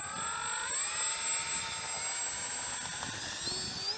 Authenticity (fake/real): real